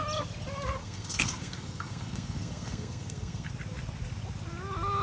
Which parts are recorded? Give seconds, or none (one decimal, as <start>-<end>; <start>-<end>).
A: 0.0-0.8; 3.5-5.0